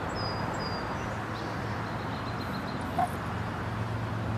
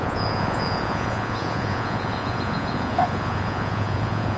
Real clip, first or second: first